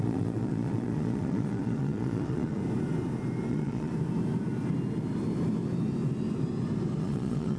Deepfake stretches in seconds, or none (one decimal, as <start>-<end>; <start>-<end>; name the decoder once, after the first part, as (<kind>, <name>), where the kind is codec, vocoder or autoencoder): 0.0-2.6 (vocoder, Vocos); 3.5-3.9; 7.0-7.6